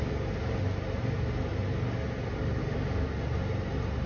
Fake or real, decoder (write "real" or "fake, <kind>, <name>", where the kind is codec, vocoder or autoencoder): real